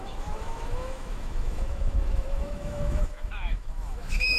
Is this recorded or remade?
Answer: remade